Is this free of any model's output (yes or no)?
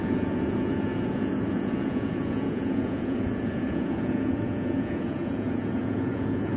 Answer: no